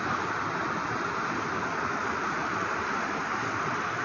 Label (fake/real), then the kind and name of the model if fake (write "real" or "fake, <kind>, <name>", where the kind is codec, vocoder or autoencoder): fake, vocoder, BigVGAN v2